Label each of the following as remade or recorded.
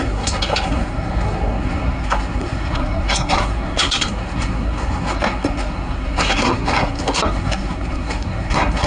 remade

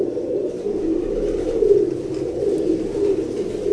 recorded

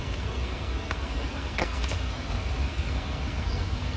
remade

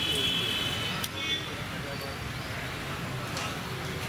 recorded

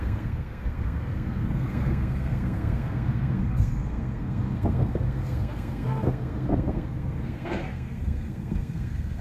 remade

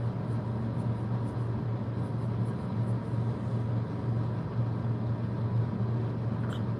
recorded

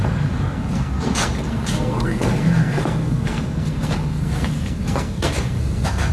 remade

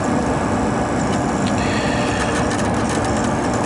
recorded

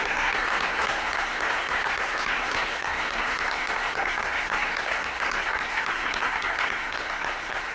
remade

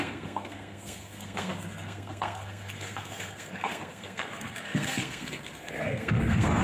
remade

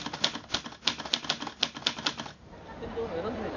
recorded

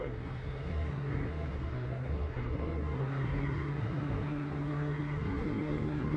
remade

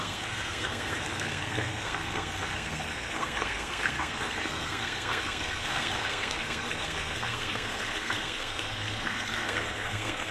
remade